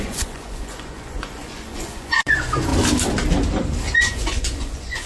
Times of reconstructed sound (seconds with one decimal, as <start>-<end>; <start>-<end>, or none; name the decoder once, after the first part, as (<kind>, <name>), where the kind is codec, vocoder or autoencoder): 0.0-2.7 (vocoder, Vocos); 4.0-5.1